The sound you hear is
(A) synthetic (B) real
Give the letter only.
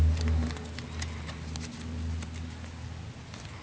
B